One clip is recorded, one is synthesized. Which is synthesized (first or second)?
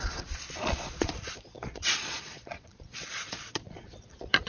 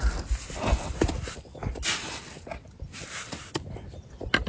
first